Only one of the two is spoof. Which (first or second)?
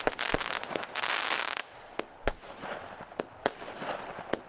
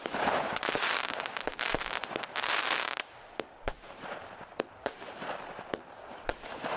second